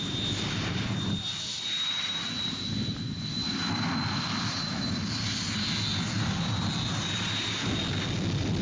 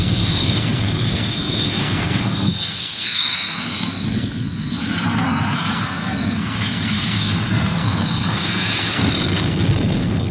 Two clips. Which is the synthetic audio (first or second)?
second